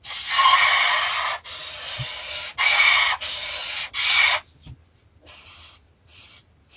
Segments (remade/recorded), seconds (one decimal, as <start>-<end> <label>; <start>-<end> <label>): 0.0-6.8 recorded